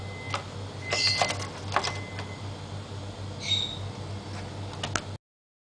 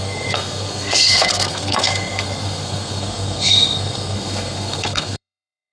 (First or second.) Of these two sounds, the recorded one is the first